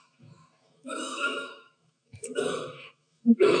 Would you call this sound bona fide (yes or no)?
no